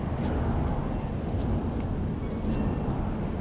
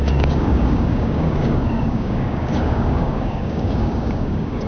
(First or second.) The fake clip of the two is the second